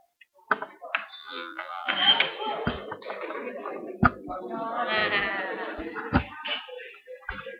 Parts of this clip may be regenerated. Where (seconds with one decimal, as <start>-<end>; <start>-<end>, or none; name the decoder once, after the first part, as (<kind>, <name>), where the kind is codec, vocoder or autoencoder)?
1.2-1.9 (vocoder, BigVGAN v2)